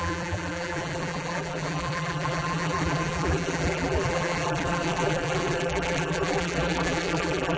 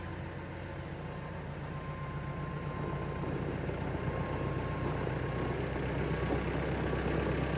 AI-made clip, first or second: first